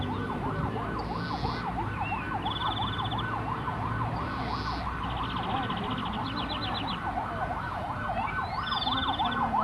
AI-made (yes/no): no